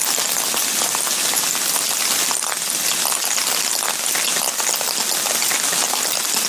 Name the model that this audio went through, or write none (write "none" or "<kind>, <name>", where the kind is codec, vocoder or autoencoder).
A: none